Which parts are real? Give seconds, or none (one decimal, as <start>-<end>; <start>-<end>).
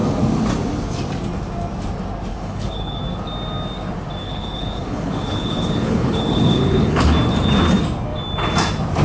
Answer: 0.0-2.3; 3.0-4.2; 7.1-9.0